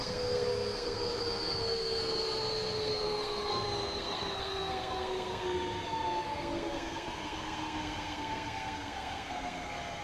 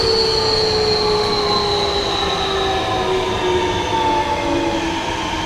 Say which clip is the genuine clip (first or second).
second